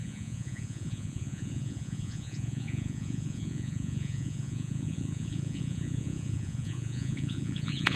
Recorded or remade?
remade